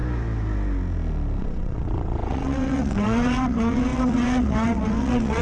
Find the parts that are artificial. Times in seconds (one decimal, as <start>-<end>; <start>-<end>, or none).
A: 1.4-5.4